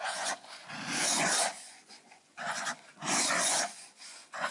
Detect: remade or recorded remade